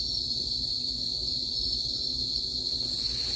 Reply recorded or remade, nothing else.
recorded